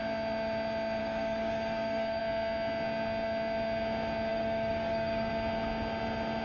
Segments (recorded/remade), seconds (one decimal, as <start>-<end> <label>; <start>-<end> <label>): 0.0-1.0 recorded; 1.0-2.2 remade; 2.2-4.3 recorded; 4.3-5.3 remade; 5.3-6.4 recorded